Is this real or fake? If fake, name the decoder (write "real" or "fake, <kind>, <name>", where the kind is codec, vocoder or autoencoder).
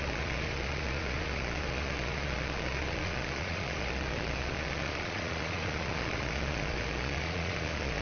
fake, vocoder, Vocos